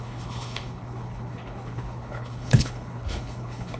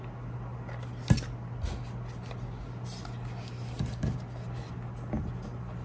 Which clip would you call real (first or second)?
second